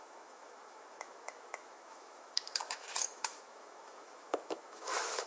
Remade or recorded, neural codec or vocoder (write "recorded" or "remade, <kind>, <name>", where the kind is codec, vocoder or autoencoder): remade, autoencoder, DAC-VAE